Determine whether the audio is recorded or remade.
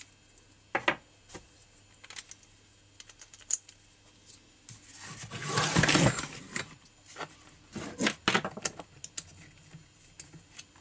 recorded